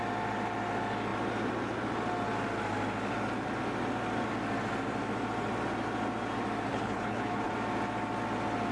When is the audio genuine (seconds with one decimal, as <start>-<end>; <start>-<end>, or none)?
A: 0.0-6.7; 7.5-8.7